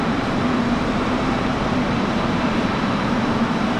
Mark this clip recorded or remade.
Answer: remade